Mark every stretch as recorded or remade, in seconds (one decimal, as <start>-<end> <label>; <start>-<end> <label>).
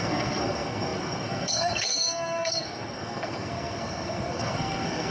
0.0-5.1 remade